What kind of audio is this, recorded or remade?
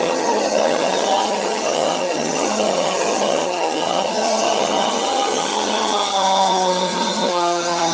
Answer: remade